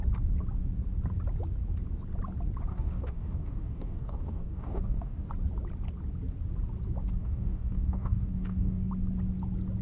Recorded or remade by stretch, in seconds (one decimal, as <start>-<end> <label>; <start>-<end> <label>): 0.0-2.7 recorded; 2.7-5.3 remade; 5.3-7.2 recorded; 7.2-8.9 remade; 8.9-9.8 recorded